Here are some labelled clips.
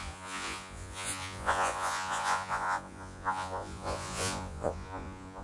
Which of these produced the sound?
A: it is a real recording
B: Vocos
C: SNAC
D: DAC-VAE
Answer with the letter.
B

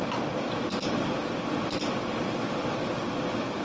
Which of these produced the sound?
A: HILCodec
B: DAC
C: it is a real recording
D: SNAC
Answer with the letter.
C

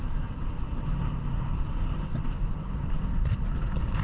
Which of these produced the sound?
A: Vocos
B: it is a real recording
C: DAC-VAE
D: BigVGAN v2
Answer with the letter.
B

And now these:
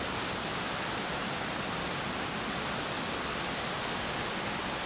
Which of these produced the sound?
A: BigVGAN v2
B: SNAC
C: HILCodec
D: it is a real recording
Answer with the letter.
D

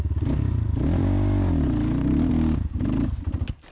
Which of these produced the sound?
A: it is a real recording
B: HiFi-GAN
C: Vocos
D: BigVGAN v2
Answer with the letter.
A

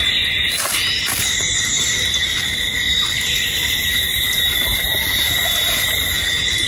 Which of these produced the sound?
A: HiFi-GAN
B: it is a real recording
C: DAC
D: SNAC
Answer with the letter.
B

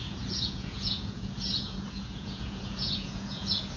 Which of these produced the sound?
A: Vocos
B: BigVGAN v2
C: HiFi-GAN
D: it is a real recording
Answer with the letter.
A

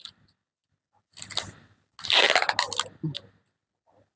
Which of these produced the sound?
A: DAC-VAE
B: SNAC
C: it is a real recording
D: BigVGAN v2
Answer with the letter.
C